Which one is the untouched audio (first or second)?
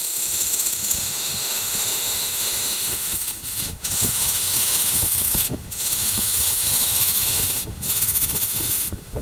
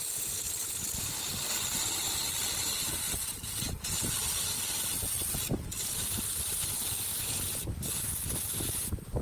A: second